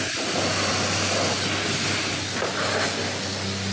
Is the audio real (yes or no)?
yes